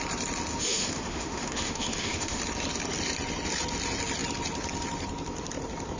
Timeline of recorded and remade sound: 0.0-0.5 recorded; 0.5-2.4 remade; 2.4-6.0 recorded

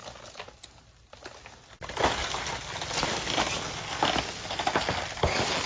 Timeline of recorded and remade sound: 0.0-5.7 recorded

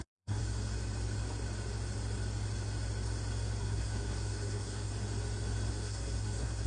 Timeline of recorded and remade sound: 0.0-0.4 remade; 0.4-3.6 recorded; 3.6-4.9 remade; 4.9-5.7 recorded; 5.7-6.7 remade

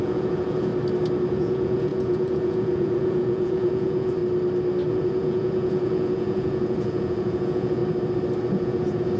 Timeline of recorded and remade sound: 0.0-0.7 remade; 0.7-1.3 recorded; 1.3-4.2 remade; 4.2-4.9 recorded; 4.9-7.8 remade; 7.8-8.5 recorded; 8.5-9.2 remade

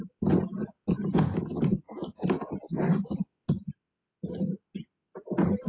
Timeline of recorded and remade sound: 0.0-5.7 recorded